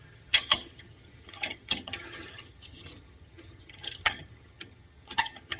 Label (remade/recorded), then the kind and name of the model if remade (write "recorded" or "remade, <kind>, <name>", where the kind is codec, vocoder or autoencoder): remade, vocoder, HiFi-GAN